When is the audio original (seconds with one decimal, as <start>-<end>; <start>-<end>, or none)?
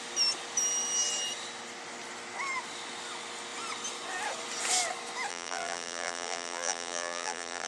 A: 0.0-5.3